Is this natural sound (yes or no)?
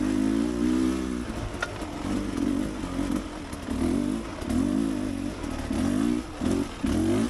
yes